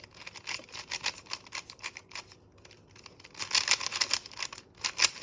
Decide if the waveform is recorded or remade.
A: recorded